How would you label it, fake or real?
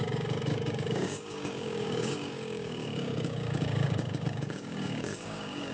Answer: fake